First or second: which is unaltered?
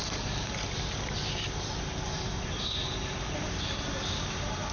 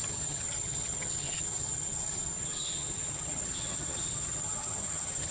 first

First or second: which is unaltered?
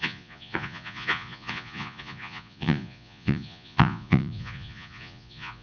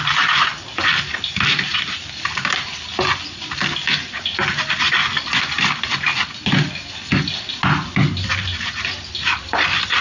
second